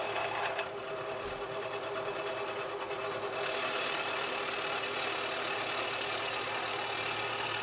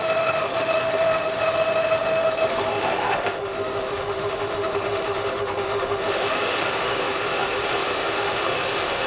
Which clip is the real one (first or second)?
first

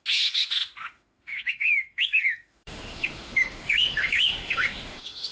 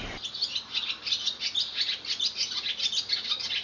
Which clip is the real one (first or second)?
second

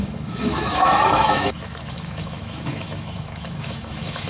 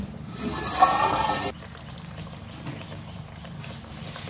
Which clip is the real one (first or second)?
second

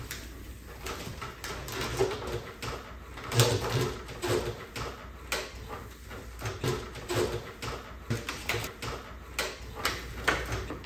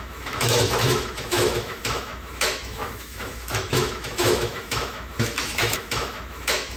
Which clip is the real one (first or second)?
first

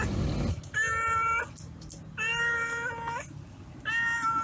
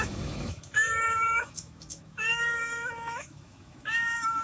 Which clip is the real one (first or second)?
first